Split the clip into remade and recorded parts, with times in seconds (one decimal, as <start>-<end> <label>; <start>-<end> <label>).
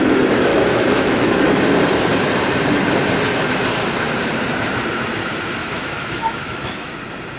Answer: 0.0-0.5 recorded; 0.5-1.6 remade; 1.6-5.6 recorded; 5.6-6.9 remade; 6.9-7.4 recorded